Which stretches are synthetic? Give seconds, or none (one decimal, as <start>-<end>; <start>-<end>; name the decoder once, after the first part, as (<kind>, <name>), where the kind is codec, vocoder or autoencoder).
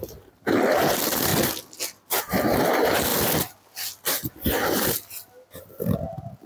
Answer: 0.0-1.3 (vocoder, BigVGAN v2); 2.2-3.1; 5.6-6.5